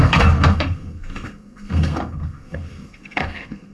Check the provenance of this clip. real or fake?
fake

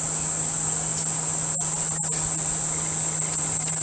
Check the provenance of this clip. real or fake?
real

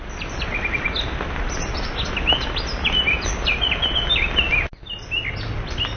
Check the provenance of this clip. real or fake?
real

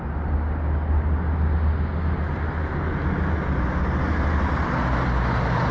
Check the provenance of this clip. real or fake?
real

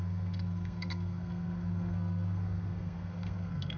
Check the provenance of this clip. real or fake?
fake